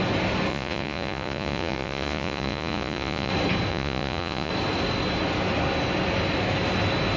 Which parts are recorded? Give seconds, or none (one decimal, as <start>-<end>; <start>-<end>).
0.0-0.5; 3.3-3.7; 4.5-7.2